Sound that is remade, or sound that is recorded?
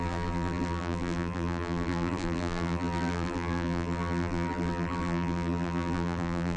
remade